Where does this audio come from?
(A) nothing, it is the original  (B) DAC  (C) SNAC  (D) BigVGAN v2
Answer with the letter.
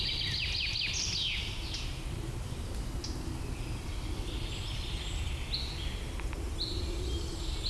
A